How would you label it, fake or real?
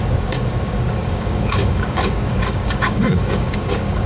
fake